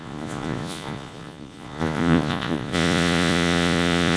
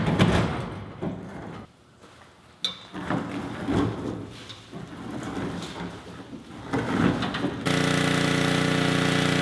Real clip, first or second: second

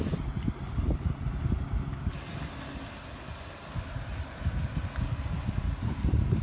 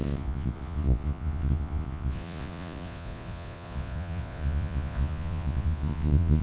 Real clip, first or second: first